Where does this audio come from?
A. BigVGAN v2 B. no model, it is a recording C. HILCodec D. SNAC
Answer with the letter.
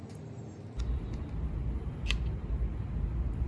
B